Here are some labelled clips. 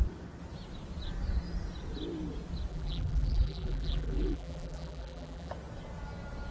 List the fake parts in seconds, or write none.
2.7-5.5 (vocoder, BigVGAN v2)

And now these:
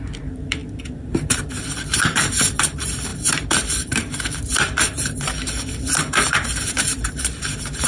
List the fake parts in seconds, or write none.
0.0-7.9 (vocoder, BigVGAN v2)

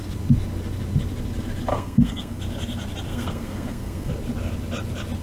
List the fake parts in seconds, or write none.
1.7-2.4 (codec, SNAC); 3.1-4.1

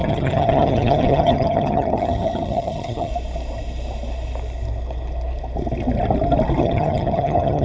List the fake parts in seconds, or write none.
0.0-3.1 (vocoder, HiFi-GAN); 6.6-7.6

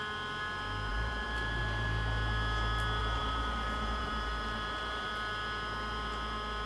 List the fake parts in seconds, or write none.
0.9-1.6 (vocoder, BigVGAN v2); 3.0-5.1